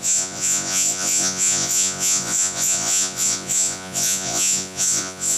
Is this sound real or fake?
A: fake